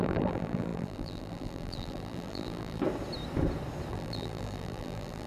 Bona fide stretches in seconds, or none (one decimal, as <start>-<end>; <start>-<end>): 2.8-3.9